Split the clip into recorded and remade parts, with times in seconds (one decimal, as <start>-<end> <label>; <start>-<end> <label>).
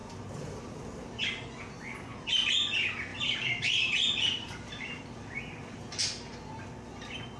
0.0-0.6 remade; 0.6-3.1 recorded; 3.1-6.0 remade; 6.0-7.4 recorded